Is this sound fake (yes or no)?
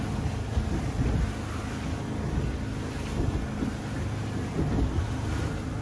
no